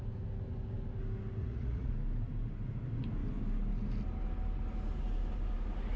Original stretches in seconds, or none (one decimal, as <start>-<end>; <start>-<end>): 0.0-1.4; 1.9-6.0